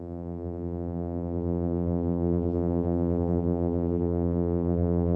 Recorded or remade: remade